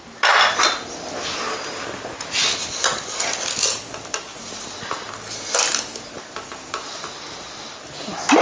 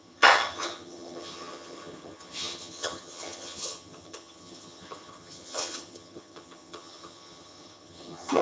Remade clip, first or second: second